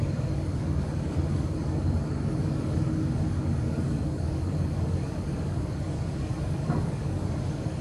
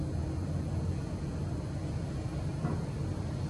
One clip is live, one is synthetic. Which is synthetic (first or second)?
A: first